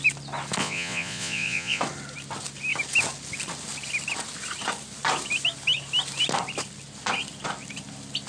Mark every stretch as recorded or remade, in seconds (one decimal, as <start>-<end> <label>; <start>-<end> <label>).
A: 0.0-0.6 recorded; 0.6-1.8 remade; 1.8-8.3 recorded